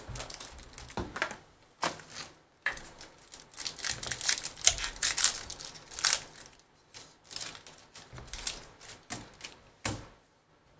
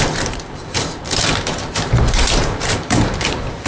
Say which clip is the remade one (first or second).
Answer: second